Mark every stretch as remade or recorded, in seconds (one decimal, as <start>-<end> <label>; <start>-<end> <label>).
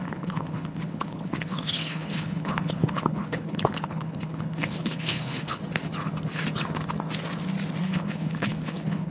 0.0-5.6 remade; 5.6-7.8 recorded; 7.8-9.1 remade